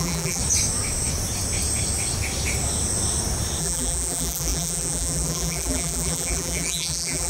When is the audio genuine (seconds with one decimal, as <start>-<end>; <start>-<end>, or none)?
0.4-3.6